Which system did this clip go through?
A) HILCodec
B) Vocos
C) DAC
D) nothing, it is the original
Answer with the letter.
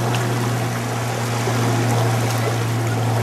D